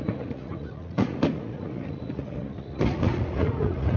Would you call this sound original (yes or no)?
no